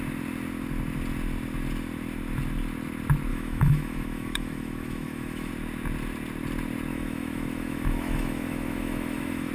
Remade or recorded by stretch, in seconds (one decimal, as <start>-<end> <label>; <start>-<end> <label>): 0.0-3.3 recorded; 3.3-5.5 remade; 5.5-6.9 recorded; 6.9-9.5 remade